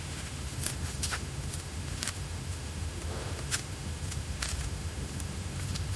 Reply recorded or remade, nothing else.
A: remade